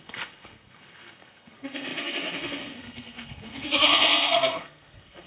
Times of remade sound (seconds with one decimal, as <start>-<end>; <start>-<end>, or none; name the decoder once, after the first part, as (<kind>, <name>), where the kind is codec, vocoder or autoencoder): 0.0-5.3 (codec, SNAC)